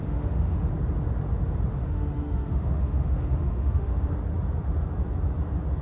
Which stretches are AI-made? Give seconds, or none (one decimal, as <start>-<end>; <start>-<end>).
0.0-0.7; 1.7-4.1

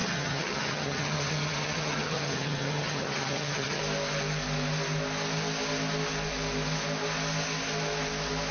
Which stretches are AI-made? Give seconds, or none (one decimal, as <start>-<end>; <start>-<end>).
0.0-3.8